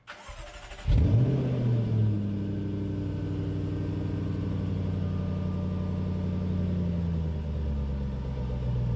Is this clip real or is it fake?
real